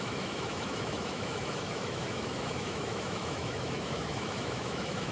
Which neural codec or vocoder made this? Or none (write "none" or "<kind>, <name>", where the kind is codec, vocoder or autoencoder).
autoencoder, DAC-VAE